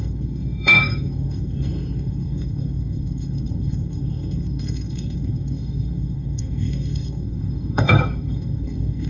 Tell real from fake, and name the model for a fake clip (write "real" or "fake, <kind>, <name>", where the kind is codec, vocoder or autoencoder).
fake, codec, SNAC